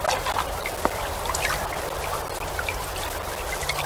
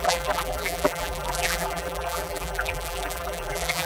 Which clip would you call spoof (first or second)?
second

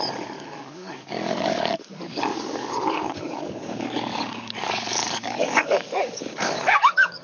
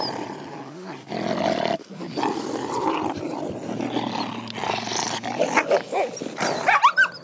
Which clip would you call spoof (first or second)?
first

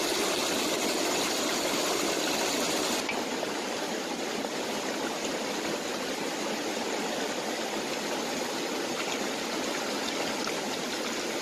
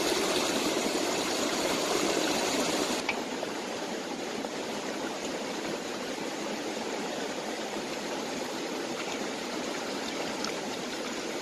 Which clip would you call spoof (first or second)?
second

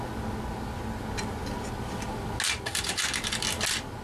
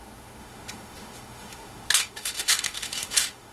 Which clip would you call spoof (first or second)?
second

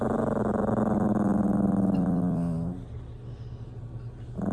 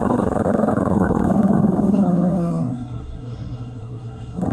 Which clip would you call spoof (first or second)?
second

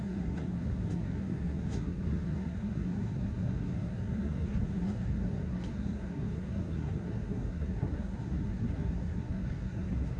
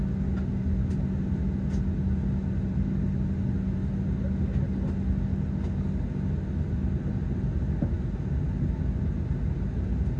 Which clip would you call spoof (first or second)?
first